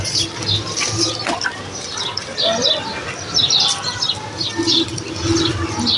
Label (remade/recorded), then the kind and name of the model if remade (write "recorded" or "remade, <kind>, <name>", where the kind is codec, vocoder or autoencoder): recorded